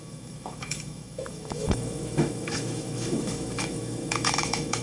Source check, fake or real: fake